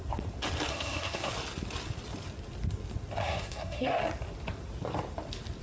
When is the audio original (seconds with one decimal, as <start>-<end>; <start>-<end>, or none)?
0.0-0.7; 1.3-3.2; 4.0-5.6